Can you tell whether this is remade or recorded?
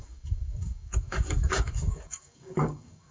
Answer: remade